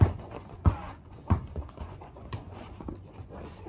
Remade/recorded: remade